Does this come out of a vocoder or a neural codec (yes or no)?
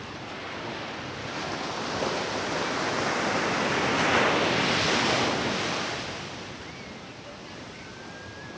no